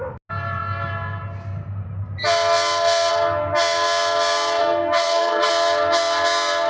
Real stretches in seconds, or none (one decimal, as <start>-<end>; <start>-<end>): 0.0-4.6; 5.5-6.7